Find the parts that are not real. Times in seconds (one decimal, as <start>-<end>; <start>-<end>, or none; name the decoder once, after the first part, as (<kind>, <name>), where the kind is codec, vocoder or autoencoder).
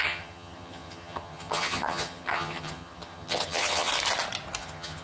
0.0-3.9 (vocoder, HiFi-GAN); 4.6-5.0